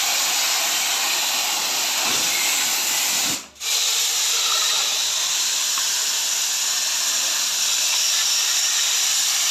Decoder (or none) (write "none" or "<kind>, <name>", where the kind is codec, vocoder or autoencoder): none